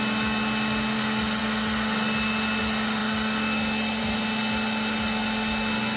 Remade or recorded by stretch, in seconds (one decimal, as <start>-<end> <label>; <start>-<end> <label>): 0.0-6.0 recorded